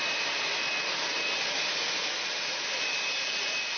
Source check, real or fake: real